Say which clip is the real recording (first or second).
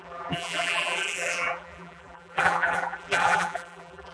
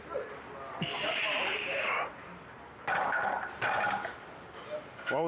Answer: second